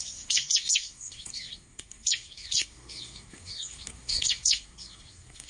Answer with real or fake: fake